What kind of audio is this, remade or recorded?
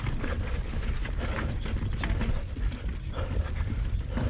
recorded